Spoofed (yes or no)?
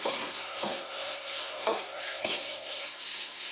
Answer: yes